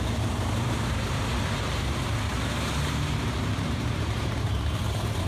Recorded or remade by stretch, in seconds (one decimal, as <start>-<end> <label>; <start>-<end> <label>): 0.0-5.3 remade